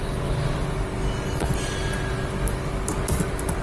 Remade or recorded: recorded